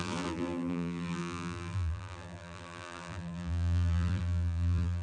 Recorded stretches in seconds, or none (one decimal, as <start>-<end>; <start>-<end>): none